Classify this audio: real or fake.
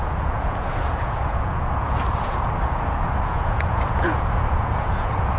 fake